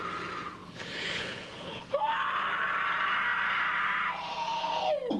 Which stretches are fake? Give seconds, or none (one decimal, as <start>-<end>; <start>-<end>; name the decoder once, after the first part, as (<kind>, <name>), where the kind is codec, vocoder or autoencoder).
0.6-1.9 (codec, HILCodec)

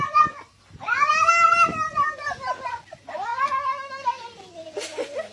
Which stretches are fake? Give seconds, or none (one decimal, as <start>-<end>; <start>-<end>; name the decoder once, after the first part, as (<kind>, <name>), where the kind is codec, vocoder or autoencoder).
none

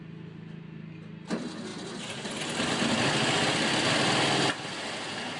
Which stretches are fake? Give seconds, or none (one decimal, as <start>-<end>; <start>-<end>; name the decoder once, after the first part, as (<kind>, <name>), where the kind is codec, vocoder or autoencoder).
none